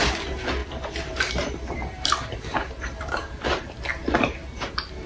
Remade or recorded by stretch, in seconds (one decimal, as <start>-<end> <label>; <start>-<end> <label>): 0.0-0.6 recorded; 0.6-3.7 remade; 3.7-5.1 recorded